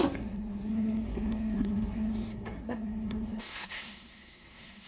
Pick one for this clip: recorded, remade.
remade